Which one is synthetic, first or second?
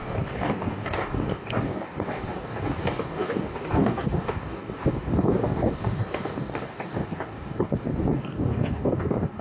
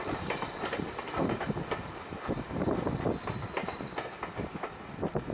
first